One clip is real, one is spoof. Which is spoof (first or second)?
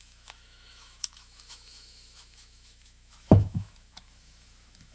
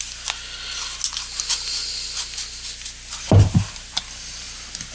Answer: first